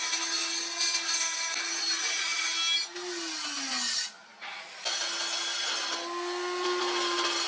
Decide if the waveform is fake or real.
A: real